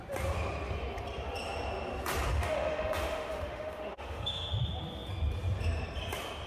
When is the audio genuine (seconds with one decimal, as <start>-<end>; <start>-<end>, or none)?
0.0-2.3; 4.5-6.5